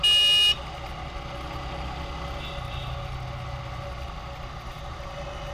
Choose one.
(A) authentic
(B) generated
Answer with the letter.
A